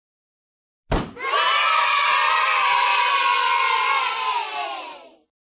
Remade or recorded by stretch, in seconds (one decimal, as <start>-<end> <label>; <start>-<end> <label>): 0.0-1.8 recorded; 1.8-5.1 remade; 5.1-5.5 recorded